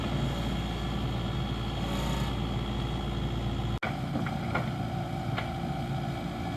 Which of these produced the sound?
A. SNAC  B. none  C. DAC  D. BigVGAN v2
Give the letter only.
B